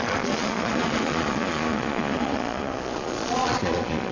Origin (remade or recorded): remade